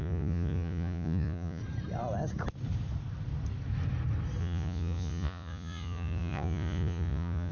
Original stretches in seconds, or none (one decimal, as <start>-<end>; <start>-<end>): 1.6-4.4